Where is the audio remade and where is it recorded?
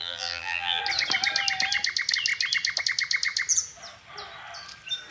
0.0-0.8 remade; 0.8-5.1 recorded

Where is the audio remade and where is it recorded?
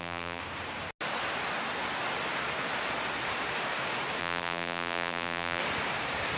0.0-0.4 remade; 0.4-4.2 recorded; 4.2-5.6 remade; 5.6-6.4 recorded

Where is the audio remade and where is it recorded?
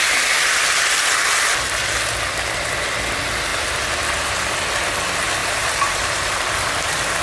0.0-3.5 recorded; 3.5-4.4 remade; 4.4-5.4 recorded; 5.4-6.4 remade; 6.4-7.2 recorded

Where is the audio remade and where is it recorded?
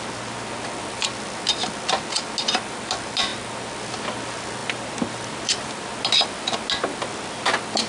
0.0-4.6 recorded; 4.6-5.7 remade; 5.7-7.9 recorded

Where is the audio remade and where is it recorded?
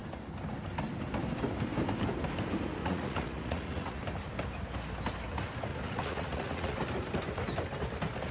0.0-2.8 recorded; 2.8-4.0 remade; 4.0-5.7 recorded; 5.7-6.8 remade; 6.8-8.3 recorded